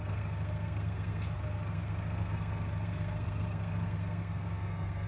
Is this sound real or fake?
fake